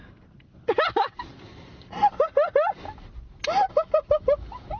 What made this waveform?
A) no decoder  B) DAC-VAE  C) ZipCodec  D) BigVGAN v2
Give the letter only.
A